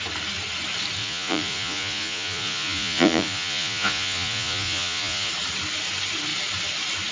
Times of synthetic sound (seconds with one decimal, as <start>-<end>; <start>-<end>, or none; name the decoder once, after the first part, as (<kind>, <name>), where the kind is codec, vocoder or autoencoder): 1.0-5.3 (vocoder, Vocos)